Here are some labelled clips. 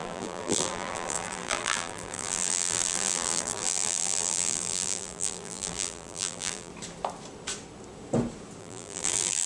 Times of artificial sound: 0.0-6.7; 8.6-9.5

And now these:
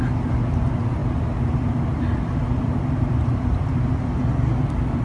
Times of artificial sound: none

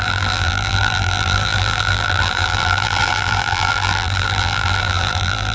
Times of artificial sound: 0.0-5.5